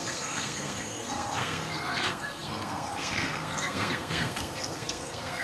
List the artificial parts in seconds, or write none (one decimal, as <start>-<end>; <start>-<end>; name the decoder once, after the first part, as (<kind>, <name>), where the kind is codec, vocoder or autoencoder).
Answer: 0.0-5.4 (codec, SNAC)